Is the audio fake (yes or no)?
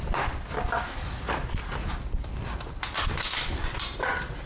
no